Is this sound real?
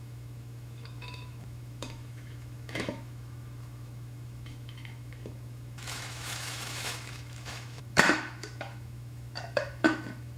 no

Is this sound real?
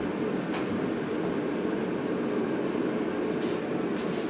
yes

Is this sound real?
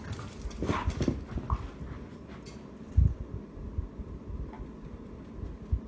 yes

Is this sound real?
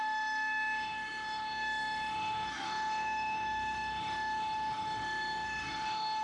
no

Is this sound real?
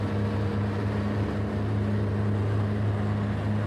yes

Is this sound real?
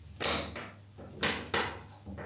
yes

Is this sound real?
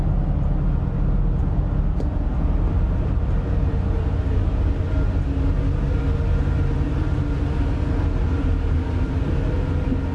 yes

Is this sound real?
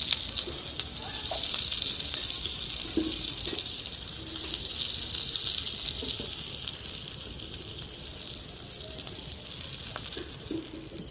yes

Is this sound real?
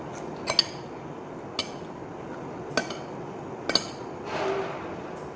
yes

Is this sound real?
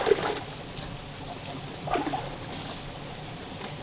yes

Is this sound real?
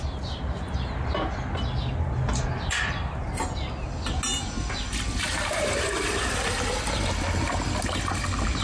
yes